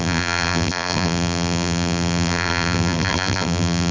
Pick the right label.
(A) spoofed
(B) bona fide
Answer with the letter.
A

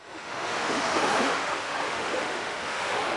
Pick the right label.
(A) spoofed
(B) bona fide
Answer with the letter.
A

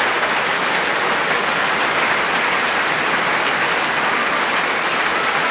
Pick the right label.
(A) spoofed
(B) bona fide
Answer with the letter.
B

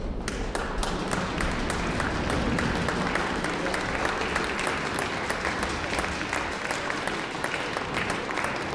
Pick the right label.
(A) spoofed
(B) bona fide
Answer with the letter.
B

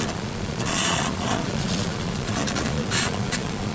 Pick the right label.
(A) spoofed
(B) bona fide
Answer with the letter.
A